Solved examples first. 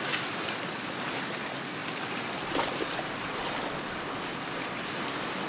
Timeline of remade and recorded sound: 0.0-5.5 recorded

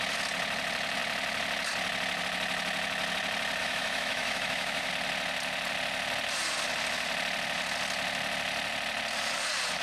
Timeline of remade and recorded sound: 0.0-3.6 recorded; 3.6-4.9 remade; 4.9-9.8 recorded

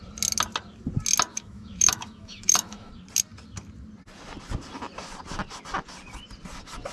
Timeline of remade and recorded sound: 0.0-1.3 recorded; 1.3-2.9 remade; 2.9-6.9 recorded

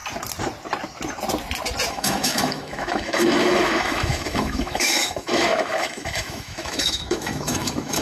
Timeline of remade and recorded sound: 0.0-1.9 recorded; 1.9-8.0 remade

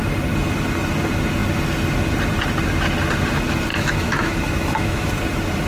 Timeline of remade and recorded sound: 0.0-3.7 recorded; 3.7-5.1 remade; 5.1-5.7 recorded

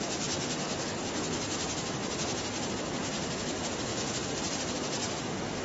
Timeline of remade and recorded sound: 0.0-5.6 recorded